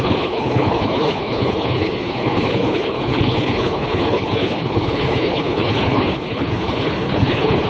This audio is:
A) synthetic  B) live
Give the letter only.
A